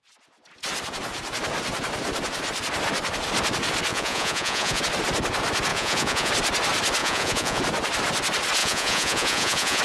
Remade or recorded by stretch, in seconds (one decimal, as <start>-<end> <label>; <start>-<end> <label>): 0.0-3.9 recorded; 3.9-4.8 remade; 4.8-5.7 recorded; 5.7-6.3 remade; 6.3-7.0 recorded; 7.0-7.6 remade; 7.6-8.6 recorded; 8.6-9.8 remade